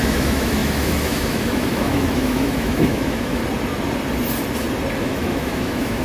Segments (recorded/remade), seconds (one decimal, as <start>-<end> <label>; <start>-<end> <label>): 0.0-3.4 remade; 3.4-5.0 recorded; 5.0-6.0 remade